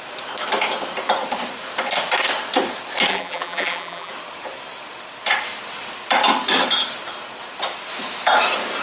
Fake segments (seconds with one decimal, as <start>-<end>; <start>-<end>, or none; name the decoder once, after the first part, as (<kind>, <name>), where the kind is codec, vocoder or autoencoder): 3.1-4.1 (vocoder, BigVGAN v2)